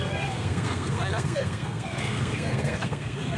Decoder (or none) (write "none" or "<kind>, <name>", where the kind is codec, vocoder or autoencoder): codec, SNAC